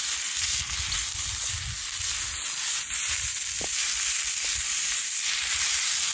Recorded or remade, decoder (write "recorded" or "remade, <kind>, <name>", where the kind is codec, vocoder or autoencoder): recorded